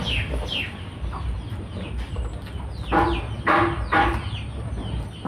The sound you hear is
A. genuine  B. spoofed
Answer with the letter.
A